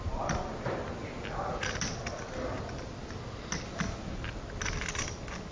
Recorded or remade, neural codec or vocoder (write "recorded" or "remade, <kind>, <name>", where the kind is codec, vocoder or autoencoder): recorded